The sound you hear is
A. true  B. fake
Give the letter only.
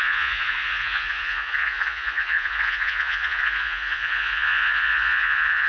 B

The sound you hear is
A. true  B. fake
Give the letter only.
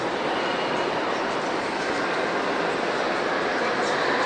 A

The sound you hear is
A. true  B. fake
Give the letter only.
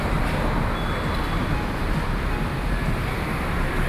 A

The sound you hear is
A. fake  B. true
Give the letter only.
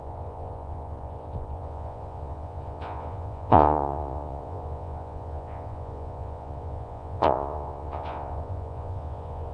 A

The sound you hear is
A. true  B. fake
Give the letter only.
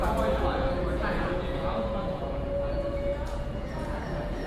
B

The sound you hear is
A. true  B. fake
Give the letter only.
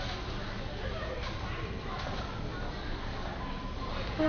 A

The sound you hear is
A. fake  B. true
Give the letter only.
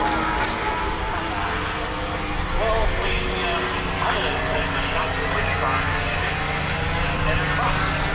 B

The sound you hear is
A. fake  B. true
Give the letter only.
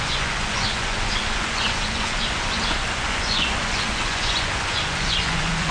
A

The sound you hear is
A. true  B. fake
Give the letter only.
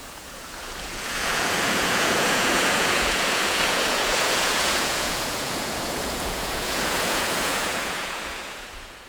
B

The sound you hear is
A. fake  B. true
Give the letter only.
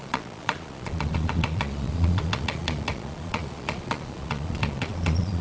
A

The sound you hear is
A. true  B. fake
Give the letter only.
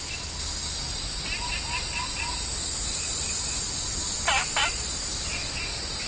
A